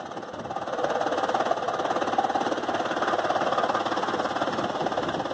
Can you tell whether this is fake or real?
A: real